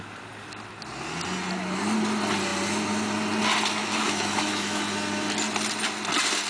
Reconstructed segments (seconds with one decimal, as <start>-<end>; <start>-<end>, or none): 3.8-4.8